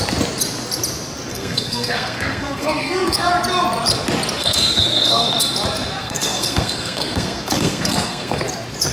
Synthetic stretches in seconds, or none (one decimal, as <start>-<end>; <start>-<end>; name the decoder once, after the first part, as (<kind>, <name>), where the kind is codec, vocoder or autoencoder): 1.3-3.3 (codec, SNAC); 4.4-5.4; 6.0-8.4